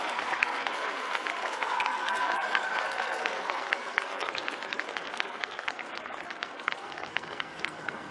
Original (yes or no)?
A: no